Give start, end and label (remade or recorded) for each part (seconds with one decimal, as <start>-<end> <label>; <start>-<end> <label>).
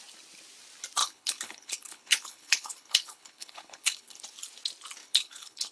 0.0-1.0 recorded; 1.0-4.2 remade; 4.2-5.0 recorded; 5.0-5.7 remade